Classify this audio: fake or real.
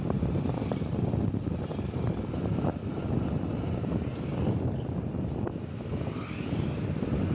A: real